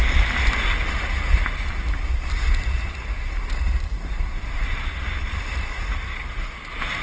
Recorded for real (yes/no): yes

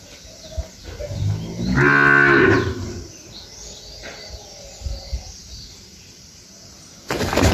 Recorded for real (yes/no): yes